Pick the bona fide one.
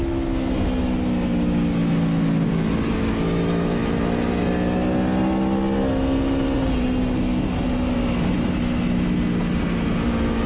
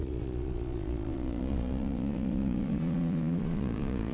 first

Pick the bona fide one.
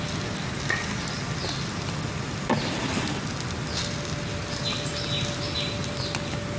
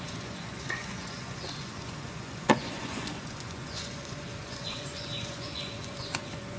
first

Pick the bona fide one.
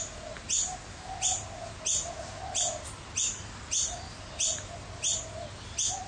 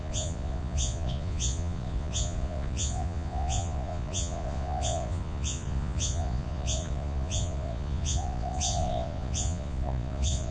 first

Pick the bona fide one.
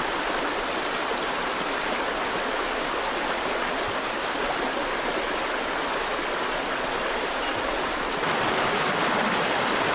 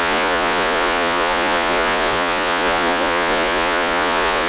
first